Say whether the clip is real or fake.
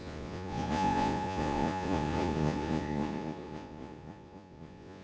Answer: fake